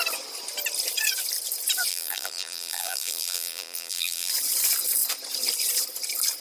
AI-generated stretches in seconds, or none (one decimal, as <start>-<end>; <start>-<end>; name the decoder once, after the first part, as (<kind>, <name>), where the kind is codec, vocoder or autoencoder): 1.9-4.3 (vocoder, BigVGAN v2)